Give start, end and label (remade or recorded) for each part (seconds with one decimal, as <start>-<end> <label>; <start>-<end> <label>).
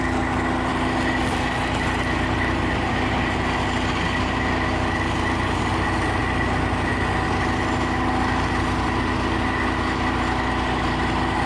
0.0-6.2 recorded; 6.2-6.9 remade; 6.9-11.5 recorded